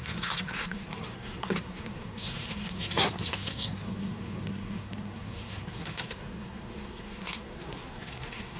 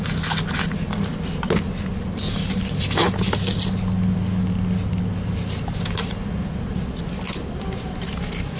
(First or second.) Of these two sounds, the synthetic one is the first